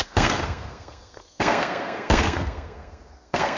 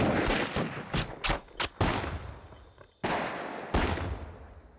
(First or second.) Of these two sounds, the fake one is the first